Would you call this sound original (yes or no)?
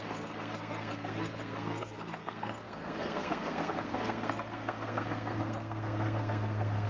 no